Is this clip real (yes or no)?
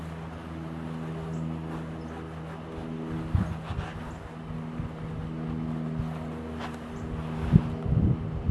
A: yes